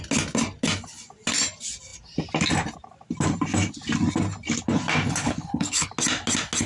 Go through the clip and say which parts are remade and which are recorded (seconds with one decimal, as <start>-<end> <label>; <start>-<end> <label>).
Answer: 0.0-5.2 recorded; 5.2-5.9 remade; 5.9-6.7 recorded